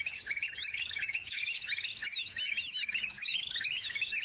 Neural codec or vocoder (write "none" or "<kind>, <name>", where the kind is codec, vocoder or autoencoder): autoencoder, DAC-VAE